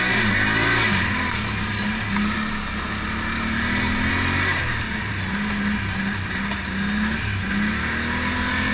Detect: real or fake real